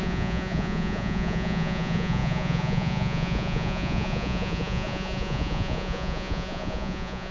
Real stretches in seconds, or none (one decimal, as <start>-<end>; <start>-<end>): none